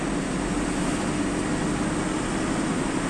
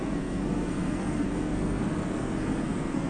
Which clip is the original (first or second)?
first